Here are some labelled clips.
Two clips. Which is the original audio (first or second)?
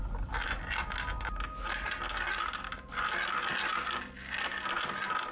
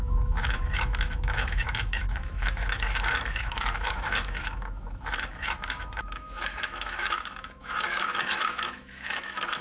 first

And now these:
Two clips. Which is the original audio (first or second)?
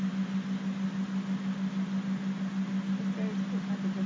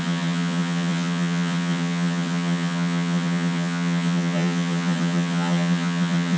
first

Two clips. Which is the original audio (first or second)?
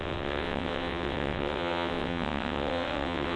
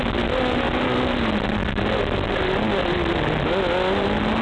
second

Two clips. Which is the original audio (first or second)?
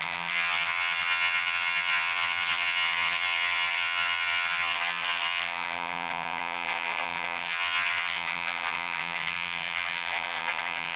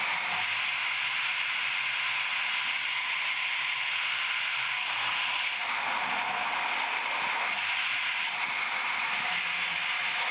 second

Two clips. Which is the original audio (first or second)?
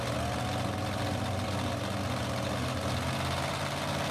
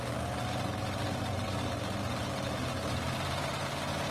first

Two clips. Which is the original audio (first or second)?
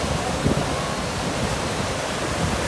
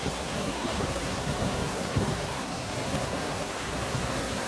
first